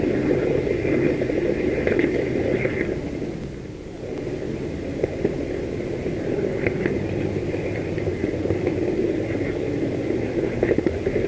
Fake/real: real